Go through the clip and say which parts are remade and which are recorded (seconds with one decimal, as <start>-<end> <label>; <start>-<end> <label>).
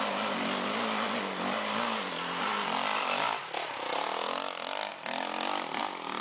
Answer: 0.0-6.2 recorded